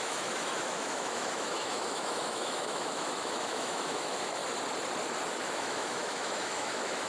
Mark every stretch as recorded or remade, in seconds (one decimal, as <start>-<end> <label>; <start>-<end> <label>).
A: 0.0-4.4 remade; 4.4-5.3 recorded; 5.3-7.1 remade